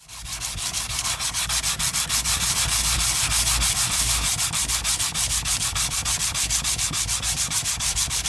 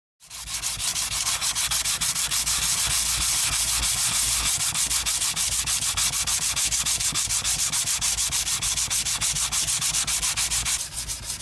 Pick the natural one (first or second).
second